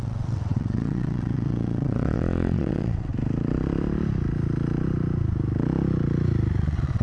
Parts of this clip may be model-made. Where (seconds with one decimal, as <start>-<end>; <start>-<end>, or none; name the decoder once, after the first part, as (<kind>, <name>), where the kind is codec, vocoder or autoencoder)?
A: 0.0-3.1 (vocoder, WaveNeXt); 6.6-7.0